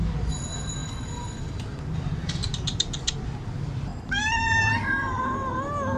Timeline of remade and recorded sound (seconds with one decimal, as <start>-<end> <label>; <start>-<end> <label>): 0.0-2.5 recorded; 2.5-3.1 remade; 3.1-3.9 recorded; 3.9-5.2 remade; 5.2-6.0 recorded